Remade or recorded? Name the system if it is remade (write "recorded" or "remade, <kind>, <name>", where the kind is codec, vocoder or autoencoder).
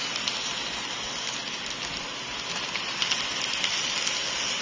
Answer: recorded